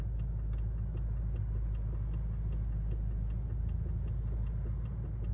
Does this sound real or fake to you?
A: real